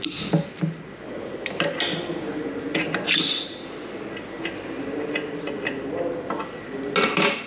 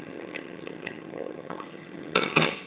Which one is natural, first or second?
first